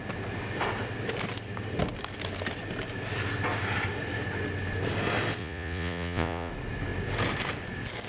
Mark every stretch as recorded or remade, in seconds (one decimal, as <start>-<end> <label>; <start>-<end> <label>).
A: 0.0-5.4 recorded; 5.4-6.5 remade; 6.5-8.1 recorded